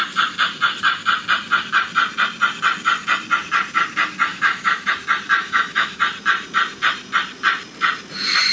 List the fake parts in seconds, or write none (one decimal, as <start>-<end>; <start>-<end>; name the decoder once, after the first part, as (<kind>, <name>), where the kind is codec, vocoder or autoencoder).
4.3-4.9 (autoencoder, DAC-VAE); 5.4-6.0